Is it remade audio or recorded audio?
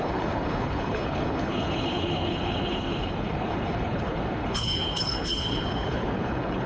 remade